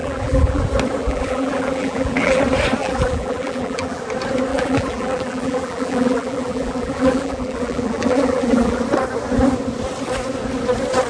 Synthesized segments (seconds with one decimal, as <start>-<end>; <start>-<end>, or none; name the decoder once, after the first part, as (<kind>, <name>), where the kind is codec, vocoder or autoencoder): 0.0-0.6 (vocoder, BigVGAN v2); 1.0-2.4; 2.8-4.0; 4.5-8.8